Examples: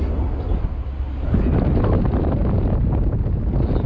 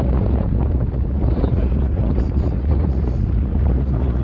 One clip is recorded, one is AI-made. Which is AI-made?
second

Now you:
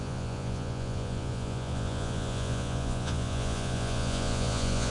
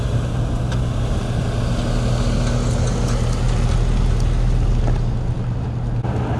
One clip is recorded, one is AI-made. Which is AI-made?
first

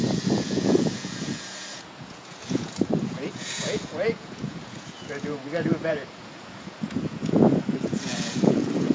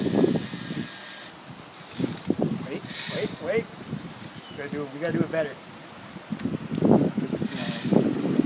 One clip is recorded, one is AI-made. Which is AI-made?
first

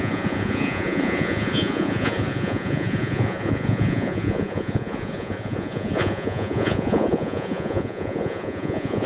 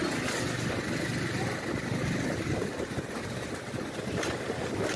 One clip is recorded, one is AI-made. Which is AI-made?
first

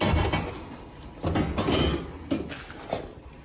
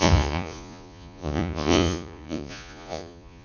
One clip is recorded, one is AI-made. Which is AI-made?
second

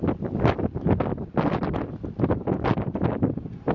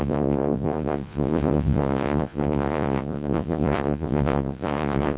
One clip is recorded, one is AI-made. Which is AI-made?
second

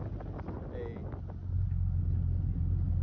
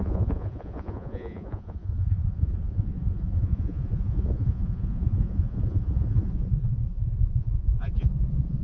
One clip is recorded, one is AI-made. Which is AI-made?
second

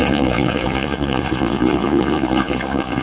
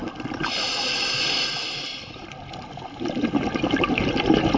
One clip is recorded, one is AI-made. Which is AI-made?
first